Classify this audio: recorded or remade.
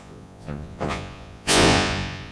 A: remade